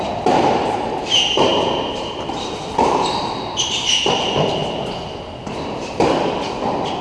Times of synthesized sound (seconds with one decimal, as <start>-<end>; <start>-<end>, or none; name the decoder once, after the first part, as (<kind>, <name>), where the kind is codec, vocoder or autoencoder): 0.0-4.6 (vocoder, BigVGAN v2)

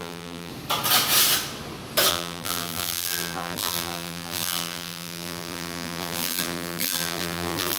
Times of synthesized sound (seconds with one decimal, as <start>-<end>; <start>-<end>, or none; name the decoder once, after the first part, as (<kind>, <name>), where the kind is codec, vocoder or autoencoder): 0.0-0.5 (vocoder, BigVGAN v2); 2.1-7.8